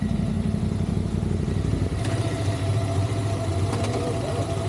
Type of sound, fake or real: fake